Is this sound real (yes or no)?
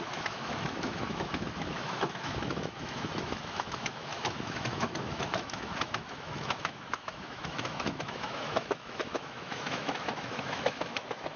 no